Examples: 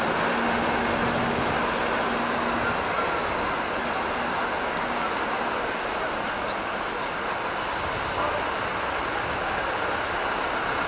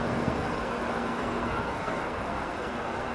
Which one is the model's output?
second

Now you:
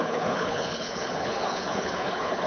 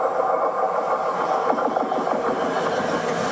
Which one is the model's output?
first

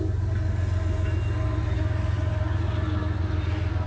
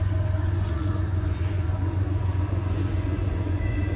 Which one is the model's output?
second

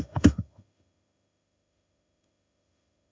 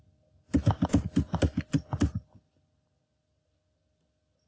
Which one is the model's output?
first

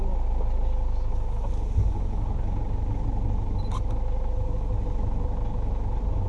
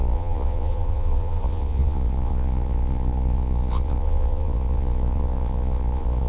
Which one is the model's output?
second